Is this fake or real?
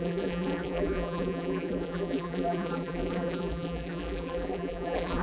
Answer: fake